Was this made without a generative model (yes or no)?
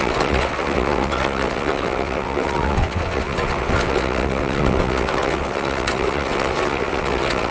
no